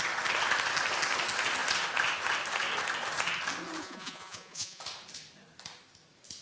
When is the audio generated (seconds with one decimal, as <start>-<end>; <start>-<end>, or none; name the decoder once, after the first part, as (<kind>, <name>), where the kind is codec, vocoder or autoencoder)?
3.8-4.8 (vocoder, Vocos)